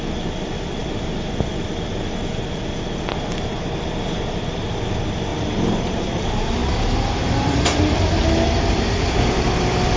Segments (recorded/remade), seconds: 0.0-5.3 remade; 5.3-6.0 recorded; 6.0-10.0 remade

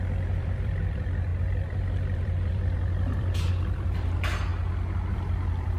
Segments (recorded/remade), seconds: 0.0-4.5 remade; 4.5-5.1 recorded; 5.1-5.8 remade

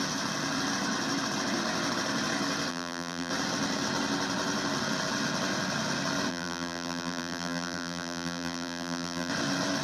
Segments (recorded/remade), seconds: 0.0-2.7 recorded; 2.7-3.3 remade; 3.3-6.3 recorded; 6.3-9.3 remade; 9.3-9.8 recorded

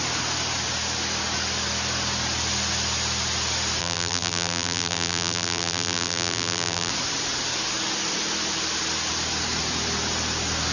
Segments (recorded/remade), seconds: 0.0-3.8 recorded; 3.8-6.9 remade; 6.9-10.7 recorded